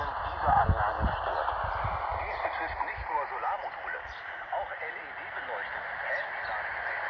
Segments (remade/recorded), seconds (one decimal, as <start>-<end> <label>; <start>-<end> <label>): 0.0-7.1 recorded